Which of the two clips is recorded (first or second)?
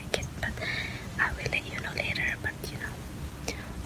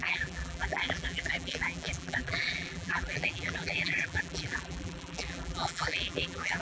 first